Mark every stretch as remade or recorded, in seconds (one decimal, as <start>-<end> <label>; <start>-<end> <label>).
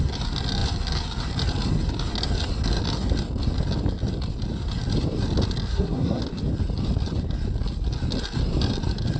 0.0-5.7 recorded; 5.7-6.2 remade; 6.2-9.2 recorded